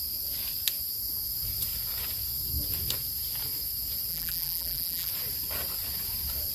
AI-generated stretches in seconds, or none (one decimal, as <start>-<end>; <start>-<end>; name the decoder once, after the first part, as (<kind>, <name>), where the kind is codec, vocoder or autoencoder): 4.1-5.1 (vocoder, BigVGAN v2)

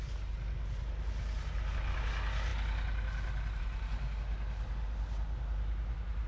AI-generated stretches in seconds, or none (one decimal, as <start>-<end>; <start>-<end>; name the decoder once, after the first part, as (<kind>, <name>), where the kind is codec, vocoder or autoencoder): none

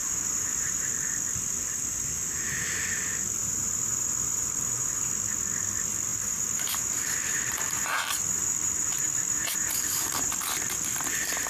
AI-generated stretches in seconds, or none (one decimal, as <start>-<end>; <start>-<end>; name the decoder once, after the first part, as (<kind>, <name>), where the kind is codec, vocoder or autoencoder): 0.0-0.9 (vocoder, BigVGAN v2); 3.4-5.1; 6.1-10.3